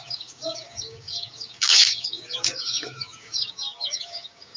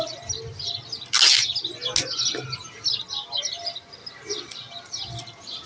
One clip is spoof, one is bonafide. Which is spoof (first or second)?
first